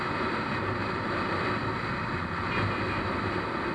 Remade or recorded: recorded